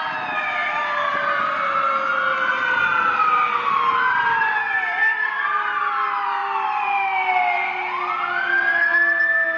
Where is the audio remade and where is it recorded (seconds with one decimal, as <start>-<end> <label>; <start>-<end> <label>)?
0.0-9.6 recorded